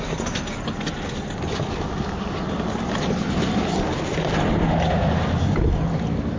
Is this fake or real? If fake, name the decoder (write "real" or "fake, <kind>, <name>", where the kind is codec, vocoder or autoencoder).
real